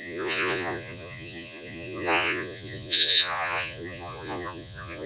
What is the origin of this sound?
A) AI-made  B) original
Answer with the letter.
A